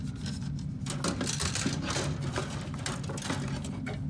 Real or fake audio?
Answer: real